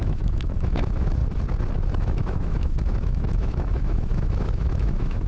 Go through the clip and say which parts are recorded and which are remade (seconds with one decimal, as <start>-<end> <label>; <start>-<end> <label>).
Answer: 0.0-1.2 remade; 1.2-1.9 recorded; 1.9-5.3 remade